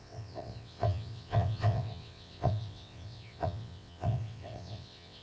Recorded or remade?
remade